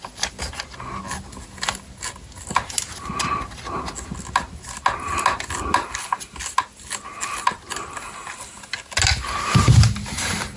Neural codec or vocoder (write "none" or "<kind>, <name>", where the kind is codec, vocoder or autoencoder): none